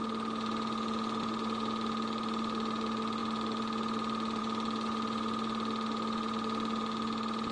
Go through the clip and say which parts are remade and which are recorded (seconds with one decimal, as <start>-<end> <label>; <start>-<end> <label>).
0.0-7.5 recorded